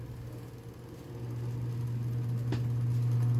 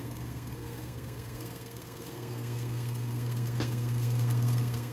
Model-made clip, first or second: second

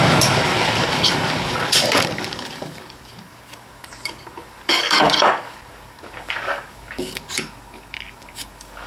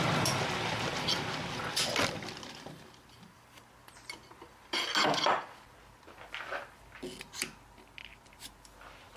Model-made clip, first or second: first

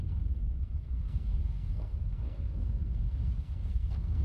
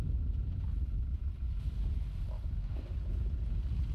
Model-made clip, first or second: first